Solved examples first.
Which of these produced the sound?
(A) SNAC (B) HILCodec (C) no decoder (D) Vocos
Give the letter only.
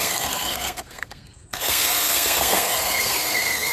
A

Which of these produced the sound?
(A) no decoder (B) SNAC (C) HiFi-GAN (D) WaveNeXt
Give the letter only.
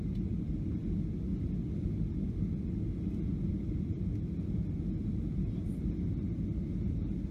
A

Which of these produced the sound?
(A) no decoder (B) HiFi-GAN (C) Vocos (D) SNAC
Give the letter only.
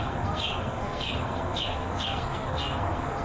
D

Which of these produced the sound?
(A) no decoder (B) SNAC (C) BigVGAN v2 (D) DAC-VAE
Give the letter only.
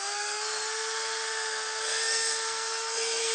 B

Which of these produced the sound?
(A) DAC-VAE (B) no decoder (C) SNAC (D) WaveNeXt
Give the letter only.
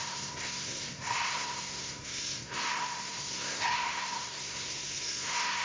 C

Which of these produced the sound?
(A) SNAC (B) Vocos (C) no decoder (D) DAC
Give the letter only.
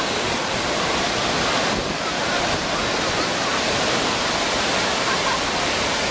C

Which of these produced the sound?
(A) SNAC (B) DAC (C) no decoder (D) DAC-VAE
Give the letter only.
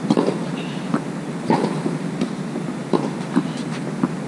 C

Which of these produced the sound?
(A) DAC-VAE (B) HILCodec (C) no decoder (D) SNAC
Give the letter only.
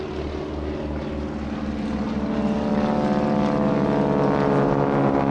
C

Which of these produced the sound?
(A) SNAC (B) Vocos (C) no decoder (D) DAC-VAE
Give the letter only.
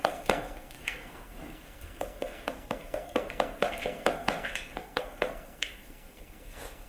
A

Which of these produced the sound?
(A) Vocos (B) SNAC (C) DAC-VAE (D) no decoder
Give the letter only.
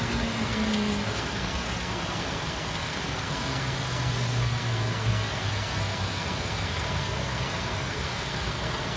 B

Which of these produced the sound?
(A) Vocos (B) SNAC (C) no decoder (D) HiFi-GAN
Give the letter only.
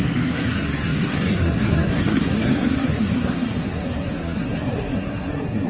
B